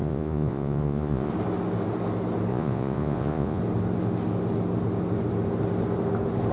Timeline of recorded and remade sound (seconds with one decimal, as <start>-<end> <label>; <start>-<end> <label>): 0.0-1.3 remade; 1.3-2.5 recorded; 2.5-3.6 remade; 3.6-6.5 recorded